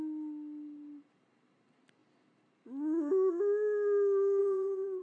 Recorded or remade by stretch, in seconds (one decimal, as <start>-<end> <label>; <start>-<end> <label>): 0.0-4.4 recorded; 4.4-5.0 remade